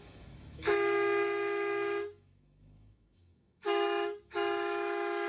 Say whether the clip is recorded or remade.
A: remade